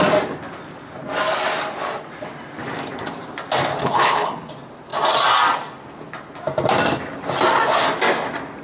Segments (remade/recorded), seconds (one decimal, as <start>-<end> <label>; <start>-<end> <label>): 0.0-3.8 recorded; 3.8-4.5 remade; 4.5-8.6 recorded